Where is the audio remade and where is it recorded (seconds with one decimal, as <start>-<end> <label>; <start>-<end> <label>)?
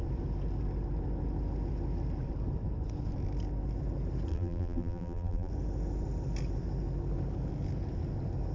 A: 0.0-4.3 recorded; 4.3-5.5 remade; 5.5-8.5 recorded